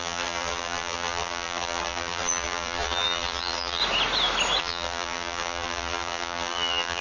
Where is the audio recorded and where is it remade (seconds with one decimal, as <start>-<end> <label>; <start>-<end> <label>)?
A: 0.0-3.8 remade; 3.8-4.6 recorded; 4.6-7.0 remade